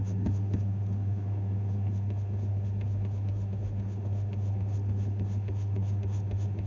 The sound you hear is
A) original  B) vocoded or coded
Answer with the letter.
B